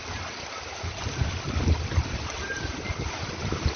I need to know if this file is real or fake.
real